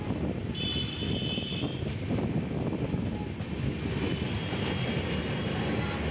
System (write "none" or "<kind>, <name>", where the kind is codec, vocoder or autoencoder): none